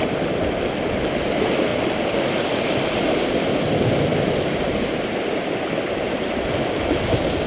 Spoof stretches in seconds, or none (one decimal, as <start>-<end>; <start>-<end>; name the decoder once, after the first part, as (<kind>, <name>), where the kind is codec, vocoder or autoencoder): none